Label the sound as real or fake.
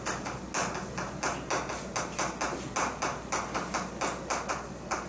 real